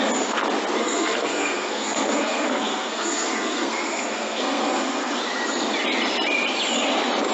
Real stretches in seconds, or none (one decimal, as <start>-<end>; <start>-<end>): 0.0-0.8; 5.2-7.3